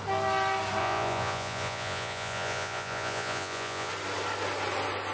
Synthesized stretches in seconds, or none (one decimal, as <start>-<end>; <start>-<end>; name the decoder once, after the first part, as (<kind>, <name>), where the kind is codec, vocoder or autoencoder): 0.8-3.9 (vocoder, Vocos)